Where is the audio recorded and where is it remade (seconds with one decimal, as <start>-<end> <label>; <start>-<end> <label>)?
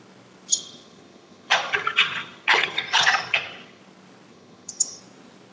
0.0-0.5 recorded; 0.5-3.8 remade; 3.8-4.3 recorded; 4.3-5.0 remade; 5.0-5.5 recorded